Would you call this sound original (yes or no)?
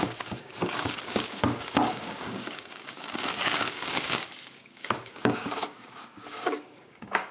no